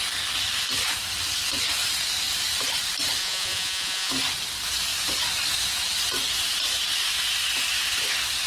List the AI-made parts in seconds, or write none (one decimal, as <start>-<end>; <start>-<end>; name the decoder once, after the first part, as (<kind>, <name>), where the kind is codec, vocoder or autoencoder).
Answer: 3.2-4.1 (vocoder, Vocos)